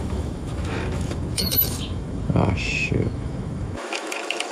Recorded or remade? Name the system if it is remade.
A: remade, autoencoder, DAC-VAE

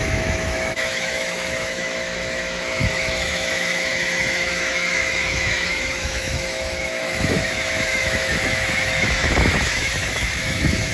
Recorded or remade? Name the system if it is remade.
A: remade, autoencoder, DAC-VAE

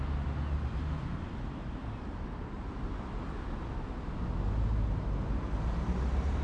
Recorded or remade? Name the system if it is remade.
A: recorded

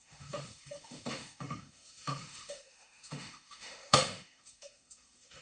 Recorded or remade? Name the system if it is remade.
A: remade, autoencoder, DAC-VAE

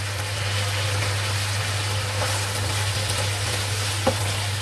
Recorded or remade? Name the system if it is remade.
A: recorded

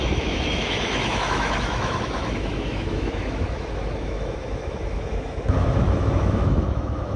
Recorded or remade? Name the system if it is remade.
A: remade, autoencoder, DAC-VAE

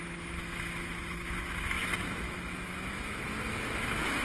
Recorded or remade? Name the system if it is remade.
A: remade, autoencoder, DAC-VAE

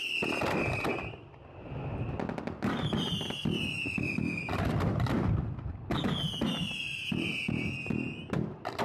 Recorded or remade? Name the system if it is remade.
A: recorded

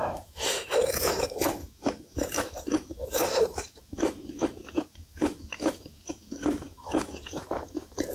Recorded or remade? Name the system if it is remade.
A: remade, autoencoder, DAC-VAE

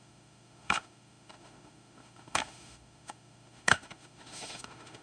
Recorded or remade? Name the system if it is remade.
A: remade, autoencoder, DAC-VAE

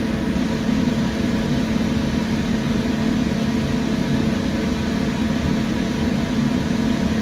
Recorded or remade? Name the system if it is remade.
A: recorded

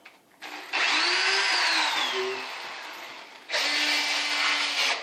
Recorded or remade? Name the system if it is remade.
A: recorded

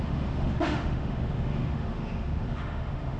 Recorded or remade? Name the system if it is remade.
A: remade, autoencoder, DAC-VAE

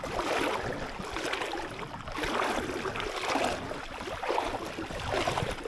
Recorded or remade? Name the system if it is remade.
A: recorded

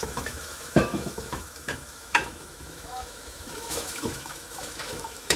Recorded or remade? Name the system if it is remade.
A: remade, autoencoder, DAC-VAE